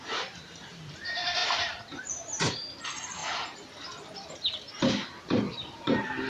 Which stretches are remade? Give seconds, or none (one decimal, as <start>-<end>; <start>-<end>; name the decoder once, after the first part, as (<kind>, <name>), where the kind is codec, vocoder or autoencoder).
0.0-3.2 (vocoder, BigVGAN v2); 5.2-6.3